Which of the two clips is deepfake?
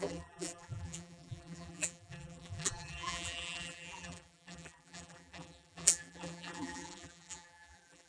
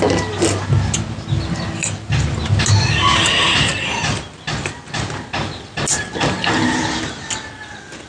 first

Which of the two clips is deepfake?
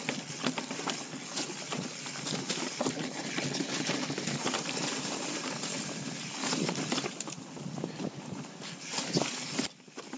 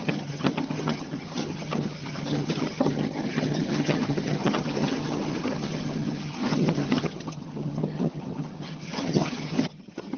second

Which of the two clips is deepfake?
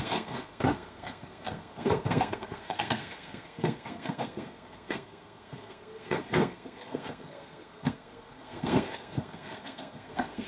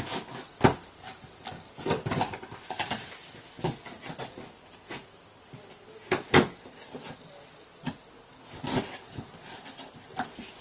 first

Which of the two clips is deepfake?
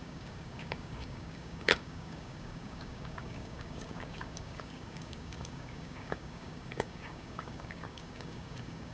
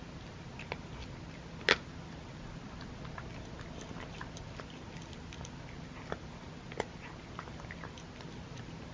first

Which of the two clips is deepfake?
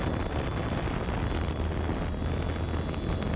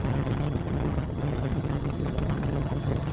second